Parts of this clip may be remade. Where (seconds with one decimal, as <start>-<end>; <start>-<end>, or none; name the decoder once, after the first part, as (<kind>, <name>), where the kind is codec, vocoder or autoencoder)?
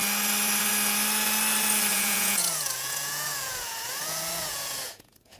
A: 1.9-5.4 (vocoder, Vocos)